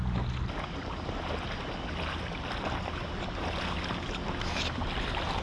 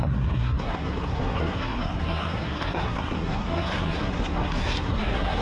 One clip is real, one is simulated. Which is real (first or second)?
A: first